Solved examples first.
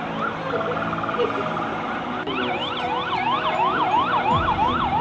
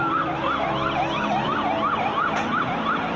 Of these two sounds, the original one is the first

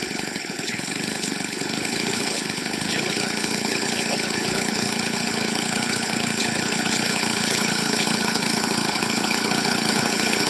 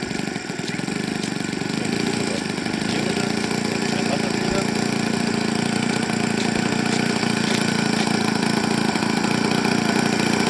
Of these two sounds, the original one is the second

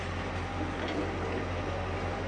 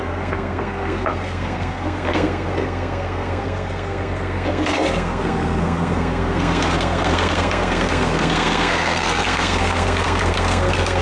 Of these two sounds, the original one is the first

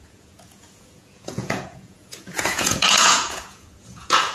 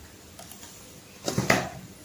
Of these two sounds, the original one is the second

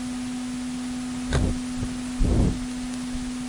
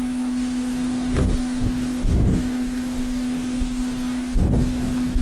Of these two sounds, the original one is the first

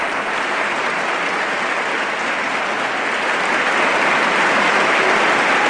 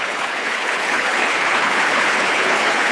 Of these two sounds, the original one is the first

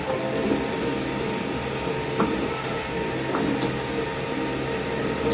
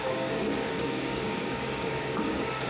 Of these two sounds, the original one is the first